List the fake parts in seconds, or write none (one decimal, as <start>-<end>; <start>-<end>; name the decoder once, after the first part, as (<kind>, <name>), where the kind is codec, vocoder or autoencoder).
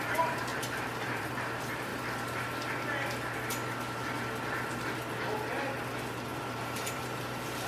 0.0-1.9 (vocoder, BigVGAN v2); 6.5-7.7